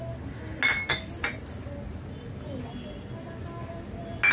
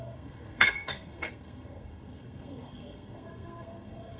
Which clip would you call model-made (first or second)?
second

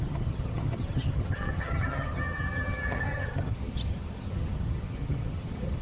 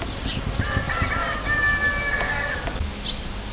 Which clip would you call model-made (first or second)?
first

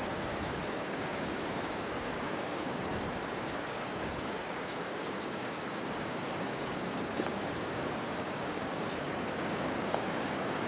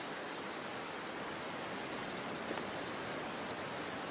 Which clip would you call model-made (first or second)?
first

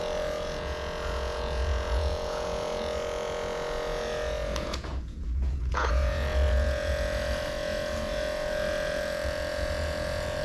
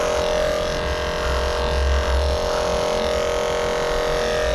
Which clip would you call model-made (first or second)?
first